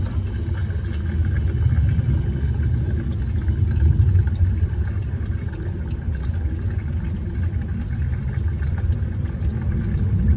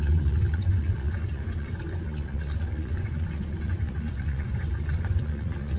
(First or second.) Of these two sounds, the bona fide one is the first